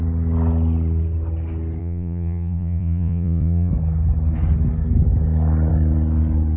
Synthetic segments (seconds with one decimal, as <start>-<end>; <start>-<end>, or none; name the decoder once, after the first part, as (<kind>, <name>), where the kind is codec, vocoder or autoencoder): 1.8-3.7 (vocoder, Vocos)